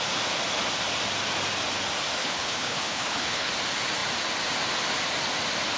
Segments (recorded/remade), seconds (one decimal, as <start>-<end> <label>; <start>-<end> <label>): 0.0-2.2 recorded; 2.2-3.5 remade; 3.5-5.8 recorded